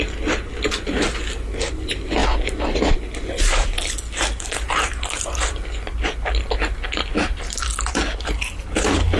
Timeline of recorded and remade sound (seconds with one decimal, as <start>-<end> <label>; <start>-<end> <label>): 0.0-9.2 recorded